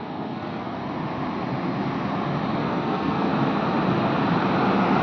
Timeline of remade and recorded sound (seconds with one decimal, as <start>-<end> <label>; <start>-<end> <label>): 0.0-0.8 remade; 0.8-2.6 recorded; 2.6-3.3 remade; 3.3-5.0 recorded